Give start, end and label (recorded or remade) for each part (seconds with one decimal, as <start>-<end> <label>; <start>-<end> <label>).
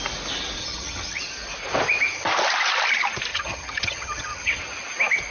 0.0-0.6 recorded; 0.6-1.2 remade; 1.2-3.3 recorded; 3.3-4.6 remade; 4.6-5.3 recorded